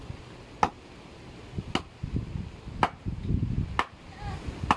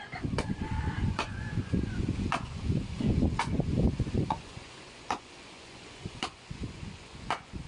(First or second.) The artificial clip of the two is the second